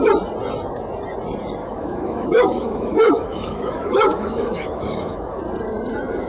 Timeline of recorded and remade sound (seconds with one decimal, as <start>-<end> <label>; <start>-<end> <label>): 0.0-1.6 recorded; 1.6-5.4 remade; 5.4-6.3 recorded